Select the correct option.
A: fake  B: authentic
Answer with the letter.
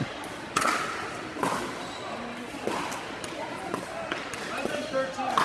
B